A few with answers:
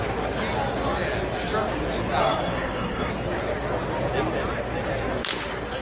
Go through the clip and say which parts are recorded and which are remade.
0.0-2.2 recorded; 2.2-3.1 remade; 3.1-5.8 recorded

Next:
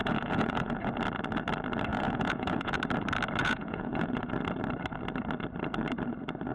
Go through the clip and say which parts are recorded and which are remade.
0.0-0.9 remade; 0.9-1.9 recorded; 1.9-2.8 remade; 2.8-3.4 recorded; 3.4-4.3 remade; 4.3-6.5 recorded

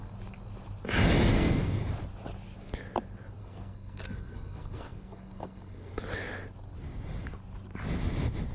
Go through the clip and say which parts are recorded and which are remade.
0.0-1.3 recorded; 1.3-1.8 remade; 1.8-3.4 recorded; 3.4-5.9 remade; 5.9-8.5 recorded

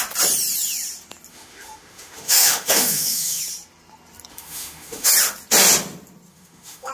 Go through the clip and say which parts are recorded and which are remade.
0.0-1.3 recorded; 1.3-3.4 remade; 3.4-4.3 recorded; 4.3-5.1 remade; 5.1-6.3 recorded; 6.3-6.9 remade

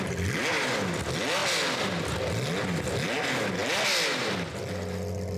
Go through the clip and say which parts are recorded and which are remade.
0.0-5.4 recorded

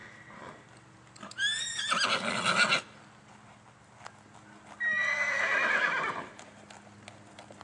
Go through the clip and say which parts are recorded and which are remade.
0.0-7.6 recorded

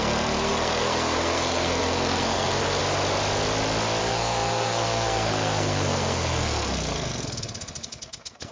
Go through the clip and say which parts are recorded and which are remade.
0.0-2.8 remade; 2.8-4.0 recorded; 4.0-8.5 remade

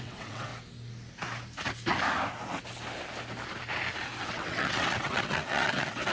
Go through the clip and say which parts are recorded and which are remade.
0.0-0.5 remade; 0.5-4.2 recorded; 4.2-6.1 remade